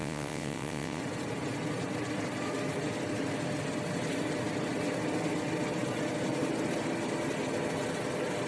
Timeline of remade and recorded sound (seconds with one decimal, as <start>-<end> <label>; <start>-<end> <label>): 0.0-1.0 remade; 1.0-8.5 recorded